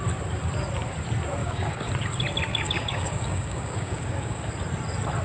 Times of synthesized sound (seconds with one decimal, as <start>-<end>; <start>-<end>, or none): 1.4-1.9; 2.5-4.5